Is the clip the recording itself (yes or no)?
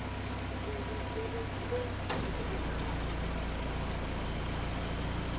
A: yes